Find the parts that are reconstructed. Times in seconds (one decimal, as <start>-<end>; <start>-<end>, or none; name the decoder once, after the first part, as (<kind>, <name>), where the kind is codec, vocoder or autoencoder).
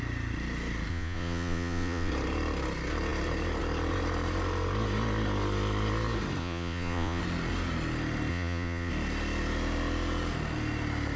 0.9-2.1 (vocoder, Vocos); 6.4-7.2; 8.3-8.9